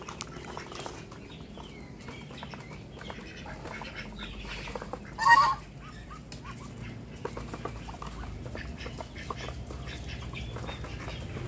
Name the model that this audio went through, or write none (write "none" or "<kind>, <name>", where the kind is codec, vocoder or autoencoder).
none